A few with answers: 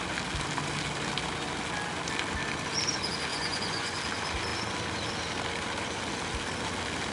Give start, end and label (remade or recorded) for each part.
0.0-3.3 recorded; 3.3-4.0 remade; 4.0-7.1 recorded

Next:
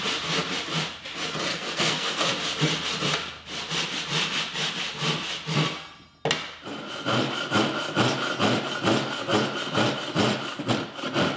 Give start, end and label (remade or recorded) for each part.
0.0-1.5 recorded; 1.5-2.3 remade; 2.3-11.4 recorded

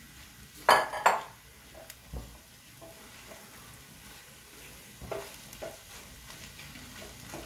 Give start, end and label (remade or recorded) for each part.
0.0-7.5 recorded

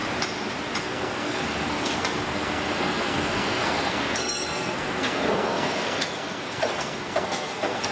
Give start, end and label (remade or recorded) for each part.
0.0-0.8 recorded; 0.8-7.9 remade